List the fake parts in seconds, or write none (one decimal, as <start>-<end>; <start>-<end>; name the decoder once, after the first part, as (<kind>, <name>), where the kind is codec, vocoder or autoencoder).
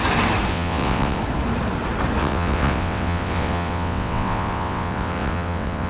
0.5-1.2 (vocoder, WaveNeXt); 2.2-5.9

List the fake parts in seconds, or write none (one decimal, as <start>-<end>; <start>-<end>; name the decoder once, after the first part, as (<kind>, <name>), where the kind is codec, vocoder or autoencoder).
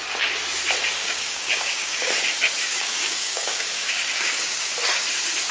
1.0-2.1 (codec, DAC); 2.6-4.7